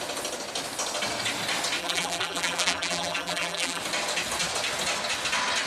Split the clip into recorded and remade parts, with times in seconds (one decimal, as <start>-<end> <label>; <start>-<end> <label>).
0.0-1.8 recorded; 1.8-3.8 remade; 3.8-5.7 recorded

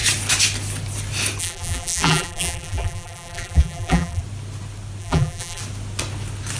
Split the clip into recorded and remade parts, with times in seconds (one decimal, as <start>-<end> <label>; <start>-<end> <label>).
0.0-1.4 recorded; 1.4-4.2 remade; 4.2-5.0 recorded; 5.0-5.6 remade; 5.6-6.6 recorded

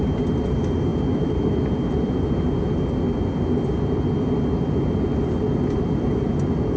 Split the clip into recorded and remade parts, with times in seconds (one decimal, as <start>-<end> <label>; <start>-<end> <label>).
0.0-6.8 recorded

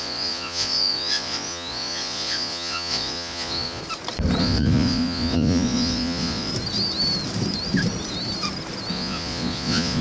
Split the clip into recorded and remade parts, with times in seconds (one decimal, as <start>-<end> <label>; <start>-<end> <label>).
0.0-3.8 remade; 3.8-4.4 recorded; 4.4-6.5 remade; 6.5-8.9 recorded; 8.9-10.0 remade

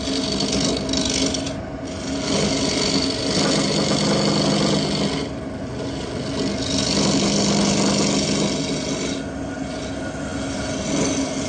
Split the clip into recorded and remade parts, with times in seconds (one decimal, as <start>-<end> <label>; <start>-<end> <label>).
0.0-11.5 recorded

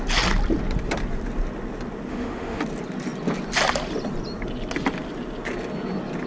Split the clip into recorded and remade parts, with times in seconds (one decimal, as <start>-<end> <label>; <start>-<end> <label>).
0.0-2.1 recorded; 2.1-2.6 remade; 2.6-6.3 recorded